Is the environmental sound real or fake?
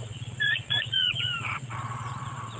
fake